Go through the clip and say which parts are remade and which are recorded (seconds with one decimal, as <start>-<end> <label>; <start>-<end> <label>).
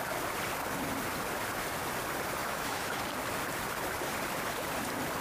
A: 0.0-2.4 recorded; 2.4-3.0 remade; 3.0-5.2 recorded